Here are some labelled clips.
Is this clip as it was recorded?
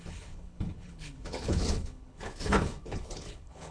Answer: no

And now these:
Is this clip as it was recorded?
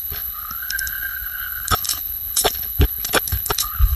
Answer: no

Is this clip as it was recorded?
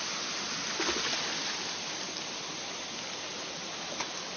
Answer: yes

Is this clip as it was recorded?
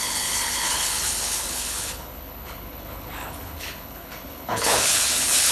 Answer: no